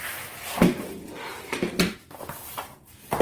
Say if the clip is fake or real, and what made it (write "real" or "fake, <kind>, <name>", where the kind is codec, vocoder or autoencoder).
real